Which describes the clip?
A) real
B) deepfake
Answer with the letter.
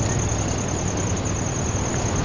A